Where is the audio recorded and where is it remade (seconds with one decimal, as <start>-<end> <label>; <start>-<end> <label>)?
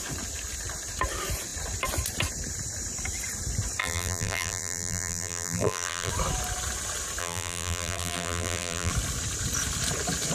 0.0-3.8 recorded; 3.8-6.1 remade; 6.1-7.2 recorded; 7.2-8.9 remade; 8.9-10.3 recorded